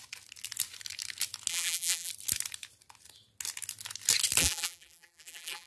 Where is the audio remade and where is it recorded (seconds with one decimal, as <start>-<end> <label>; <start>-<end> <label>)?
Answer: 0.0-1.5 recorded; 1.5-2.1 remade; 2.1-4.4 recorded; 4.4-5.7 remade